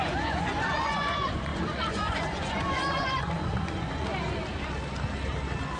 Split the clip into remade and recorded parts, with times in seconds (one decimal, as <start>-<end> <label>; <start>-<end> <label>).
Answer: 0.0-4.1 remade; 4.1-5.8 recorded

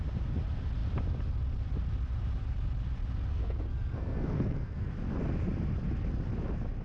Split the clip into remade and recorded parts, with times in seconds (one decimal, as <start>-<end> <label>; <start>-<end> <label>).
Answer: 0.0-3.3 recorded; 3.3-4.9 remade; 4.9-6.8 recorded

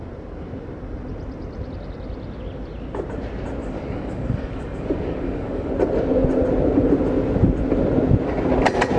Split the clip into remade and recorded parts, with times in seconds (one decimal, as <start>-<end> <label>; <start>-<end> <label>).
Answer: 0.0-3.6 recorded; 3.6-5.7 remade; 5.7-9.0 recorded

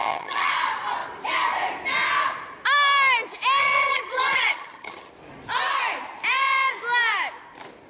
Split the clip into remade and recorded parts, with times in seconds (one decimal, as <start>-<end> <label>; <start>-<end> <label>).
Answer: 0.0-0.5 remade; 0.5-3.6 recorded; 3.6-5.1 remade; 5.1-7.9 recorded

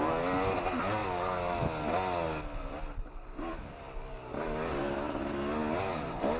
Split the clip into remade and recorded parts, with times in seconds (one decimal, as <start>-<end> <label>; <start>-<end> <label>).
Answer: 0.0-6.4 recorded

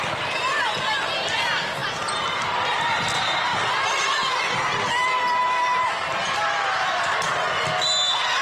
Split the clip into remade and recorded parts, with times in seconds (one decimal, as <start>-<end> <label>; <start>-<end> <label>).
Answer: 0.0-3.5 recorded; 3.5-4.4 remade; 4.4-8.4 recorded

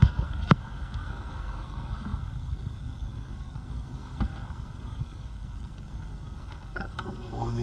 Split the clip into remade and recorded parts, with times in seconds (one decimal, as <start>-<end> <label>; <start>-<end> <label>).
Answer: 0.0-7.6 remade